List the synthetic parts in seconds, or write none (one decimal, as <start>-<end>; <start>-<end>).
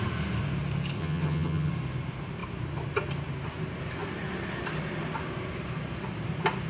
1.0-1.7